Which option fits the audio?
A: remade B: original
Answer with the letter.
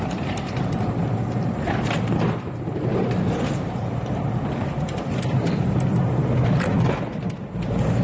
B